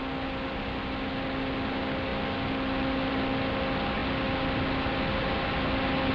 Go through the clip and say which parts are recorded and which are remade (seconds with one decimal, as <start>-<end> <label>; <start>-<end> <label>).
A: 0.0-6.1 recorded